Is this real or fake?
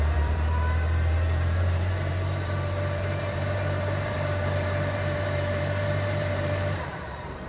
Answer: fake